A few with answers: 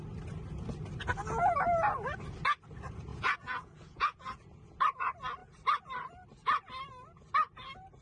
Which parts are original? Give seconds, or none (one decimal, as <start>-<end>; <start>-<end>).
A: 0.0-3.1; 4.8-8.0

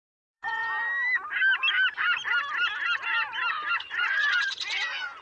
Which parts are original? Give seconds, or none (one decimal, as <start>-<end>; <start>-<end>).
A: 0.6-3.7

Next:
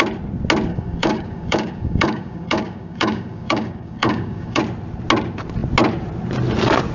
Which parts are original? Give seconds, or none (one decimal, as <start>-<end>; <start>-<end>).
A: 0.0-0.7; 4.6-6.9